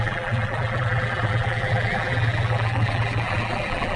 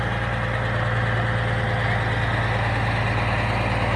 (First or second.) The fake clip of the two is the first